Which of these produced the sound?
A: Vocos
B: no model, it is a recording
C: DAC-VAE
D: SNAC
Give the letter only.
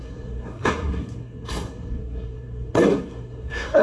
D